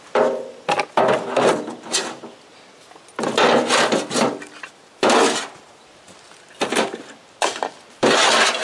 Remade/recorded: recorded